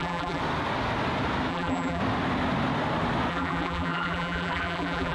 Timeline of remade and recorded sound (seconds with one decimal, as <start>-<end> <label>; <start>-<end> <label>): 0.0-0.4 remade; 0.4-1.5 recorded; 1.5-2.0 remade; 2.0-3.3 recorded; 3.3-5.1 remade